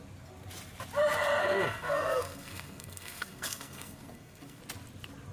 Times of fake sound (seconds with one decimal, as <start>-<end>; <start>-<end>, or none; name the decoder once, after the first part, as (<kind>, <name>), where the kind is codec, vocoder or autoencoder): 1.4-4.6 (codec, SNAC)